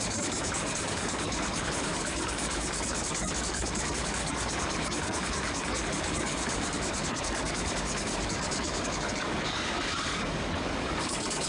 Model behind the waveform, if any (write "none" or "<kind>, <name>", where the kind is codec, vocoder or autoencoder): codec, DAC